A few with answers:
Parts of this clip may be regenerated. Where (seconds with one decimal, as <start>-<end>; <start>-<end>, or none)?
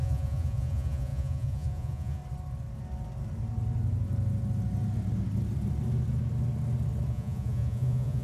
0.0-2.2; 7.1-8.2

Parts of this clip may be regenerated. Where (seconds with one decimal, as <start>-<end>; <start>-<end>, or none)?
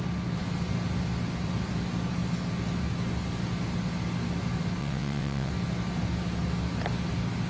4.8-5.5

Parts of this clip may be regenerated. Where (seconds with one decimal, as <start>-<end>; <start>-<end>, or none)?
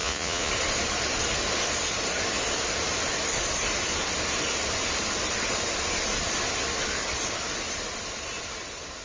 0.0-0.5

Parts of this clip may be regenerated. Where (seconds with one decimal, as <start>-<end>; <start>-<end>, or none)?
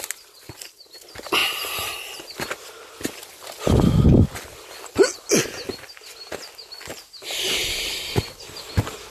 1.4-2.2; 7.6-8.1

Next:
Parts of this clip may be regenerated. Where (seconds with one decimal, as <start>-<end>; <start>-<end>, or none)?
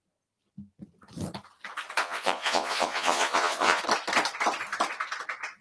2.0-3.8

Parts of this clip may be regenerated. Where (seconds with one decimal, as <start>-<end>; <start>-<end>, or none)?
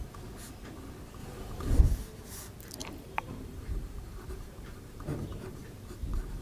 1.2-1.8; 2.8-5.6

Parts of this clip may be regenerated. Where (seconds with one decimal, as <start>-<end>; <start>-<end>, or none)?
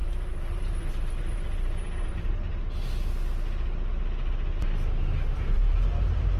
0.0-2.5; 5.2-6.4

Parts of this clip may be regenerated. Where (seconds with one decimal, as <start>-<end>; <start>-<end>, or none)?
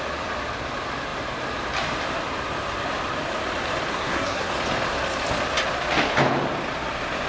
3.9-4.5